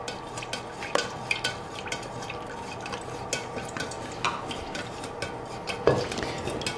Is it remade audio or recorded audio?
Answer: recorded